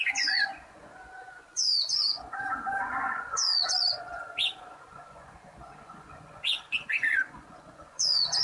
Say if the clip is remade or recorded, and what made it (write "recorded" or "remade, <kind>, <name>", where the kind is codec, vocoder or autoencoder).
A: remade, vocoder, Vocos